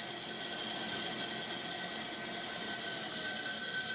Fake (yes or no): no